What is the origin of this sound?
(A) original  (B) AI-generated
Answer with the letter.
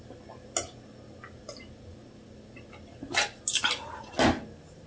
A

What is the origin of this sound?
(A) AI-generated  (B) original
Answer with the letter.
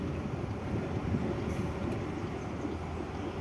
B